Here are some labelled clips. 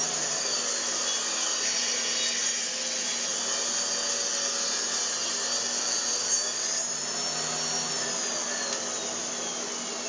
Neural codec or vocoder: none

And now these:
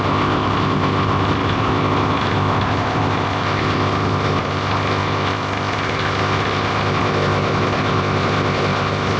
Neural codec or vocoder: codec, ZipCodec